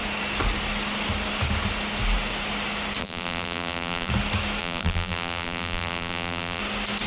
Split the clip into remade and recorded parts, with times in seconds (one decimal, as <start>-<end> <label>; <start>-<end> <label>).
0.0-3.0 recorded; 3.0-4.1 remade; 4.1-4.6 recorded; 4.6-6.6 remade; 6.6-7.1 recorded